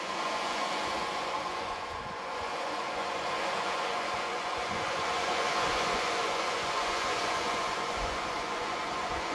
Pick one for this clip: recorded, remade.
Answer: remade